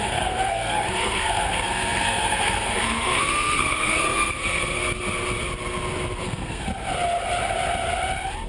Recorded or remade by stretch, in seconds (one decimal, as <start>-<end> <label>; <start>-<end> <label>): 0.0-4.8 remade; 4.8-6.2 recorded; 6.2-6.7 remade; 6.7-8.5 recorded